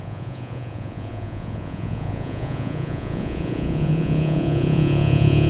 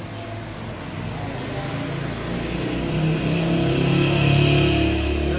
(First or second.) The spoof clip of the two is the first